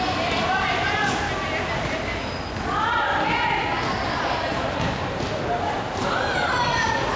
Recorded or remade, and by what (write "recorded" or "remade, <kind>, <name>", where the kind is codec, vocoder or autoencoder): recorded